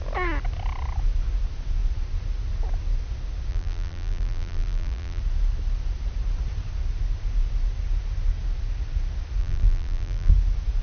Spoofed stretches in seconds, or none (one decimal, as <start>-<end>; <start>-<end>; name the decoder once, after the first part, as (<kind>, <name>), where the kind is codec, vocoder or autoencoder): 3.5-5.2 (vocoder, BigVGAN v2); 9.4-10.3